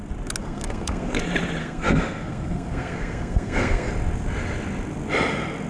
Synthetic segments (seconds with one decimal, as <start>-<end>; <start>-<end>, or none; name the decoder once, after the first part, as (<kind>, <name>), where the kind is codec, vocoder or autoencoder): 0.4-1.2 (codec, SNAC); 1.6-3.9